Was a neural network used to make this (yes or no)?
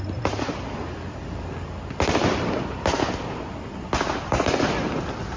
no